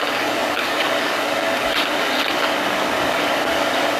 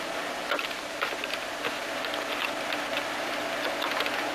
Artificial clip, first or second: first